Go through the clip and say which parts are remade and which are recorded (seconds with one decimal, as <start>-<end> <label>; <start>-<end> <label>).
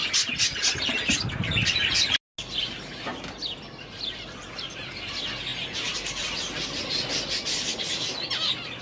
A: 0.0-0.6 remade; 0.6-3.1 recorded; 3.1-4.8 remade; 4.8-8.8 recorded